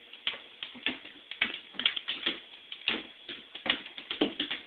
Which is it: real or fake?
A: real